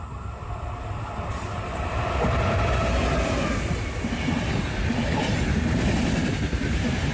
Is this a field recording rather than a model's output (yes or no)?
yes